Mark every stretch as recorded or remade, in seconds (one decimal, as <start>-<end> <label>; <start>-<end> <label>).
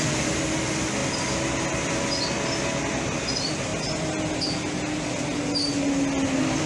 0.0-6.7 recorded